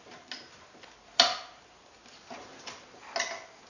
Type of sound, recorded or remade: recorded